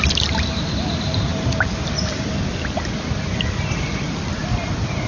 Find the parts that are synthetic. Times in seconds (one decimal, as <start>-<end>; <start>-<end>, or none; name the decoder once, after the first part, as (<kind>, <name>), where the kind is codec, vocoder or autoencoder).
none